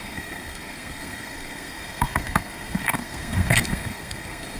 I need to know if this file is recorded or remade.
remade